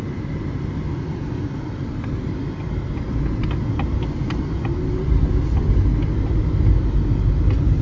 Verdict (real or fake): real